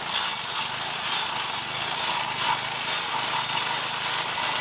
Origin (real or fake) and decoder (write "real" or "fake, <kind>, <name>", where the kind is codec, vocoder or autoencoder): real